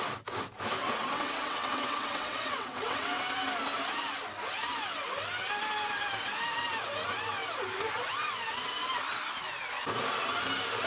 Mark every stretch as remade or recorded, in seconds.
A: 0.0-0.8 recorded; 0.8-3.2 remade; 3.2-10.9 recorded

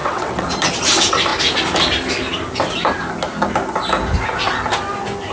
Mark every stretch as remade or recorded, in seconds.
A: 0.0-0.5 remade; 0.5-5.3 recorded

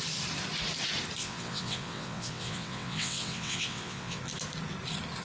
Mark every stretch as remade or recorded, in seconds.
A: 0.0-1.2 recorded; 1.2-4.2 remade; 4.2-5.2 recorded

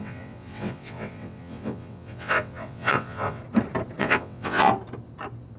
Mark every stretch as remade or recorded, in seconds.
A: 0.0-3.4 remade; 3.4-4.0 recorded; 4.0-4.7 remade; 4.7-5.6 recorded